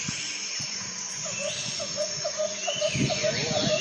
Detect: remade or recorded remade